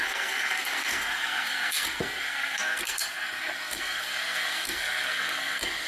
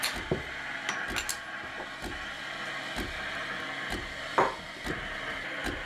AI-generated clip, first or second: first